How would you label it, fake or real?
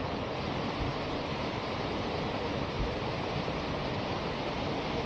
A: real